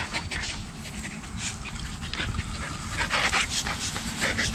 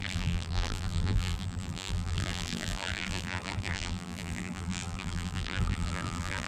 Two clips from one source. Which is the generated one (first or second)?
second